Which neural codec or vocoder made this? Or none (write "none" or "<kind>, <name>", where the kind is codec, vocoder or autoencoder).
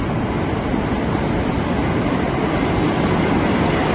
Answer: none